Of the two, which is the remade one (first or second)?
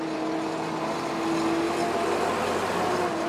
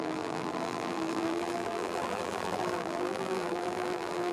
second